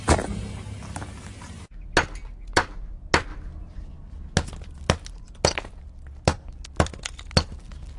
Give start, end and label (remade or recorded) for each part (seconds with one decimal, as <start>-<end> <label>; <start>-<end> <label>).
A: 0.0-8.0 recorded

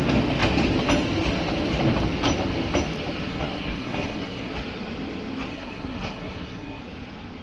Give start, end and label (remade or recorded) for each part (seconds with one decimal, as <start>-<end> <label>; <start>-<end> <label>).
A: 0.0-3.3 recorded; 3.3-4.5 remade; 4.5-5.5 recorded; 5.5-6.8 remade; 6.8-7.4 recorded

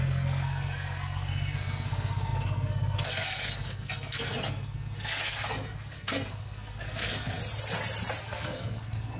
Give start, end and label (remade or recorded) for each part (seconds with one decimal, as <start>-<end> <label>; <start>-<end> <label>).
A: 0.0-7.4 remade; 7.4-8.2 recorded; 8.2-9.2 remade

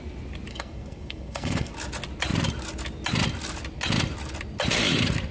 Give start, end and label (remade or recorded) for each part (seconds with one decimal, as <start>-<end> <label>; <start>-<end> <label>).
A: 0.0-0.5 recorded; 0.5-1.7 remade; 1.7-5.3 recorded

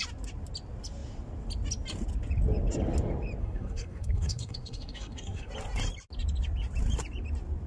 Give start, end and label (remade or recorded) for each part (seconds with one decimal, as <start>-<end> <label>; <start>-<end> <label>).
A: 0.0-3.4 recorded; 3.4-5.5 remade; 5.5-7.7 recorded

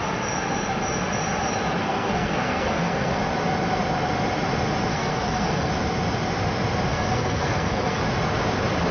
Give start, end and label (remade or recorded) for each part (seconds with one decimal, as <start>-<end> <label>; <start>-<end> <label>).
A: 0.0-1.8 recorded; 1.8-3.2 remade; 3.2-4.9 recorded; 4.9-5.7 remade; 5.7-6.9 recorded; 6.9-8.0 remade; 8.0-8.9 recorded

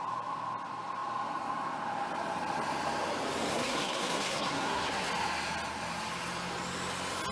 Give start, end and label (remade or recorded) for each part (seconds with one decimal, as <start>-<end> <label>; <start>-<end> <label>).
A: 0.0-3.5 recorded; 3.5-5.1 remade; 5.1-7.3 recorded

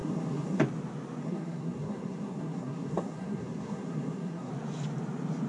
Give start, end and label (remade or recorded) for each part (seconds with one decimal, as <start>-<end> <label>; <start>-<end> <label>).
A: 0.0-0.6 remade; 0.6-1.2 recorded; 1.2-4.5 remade; 4.5-5.5 recorded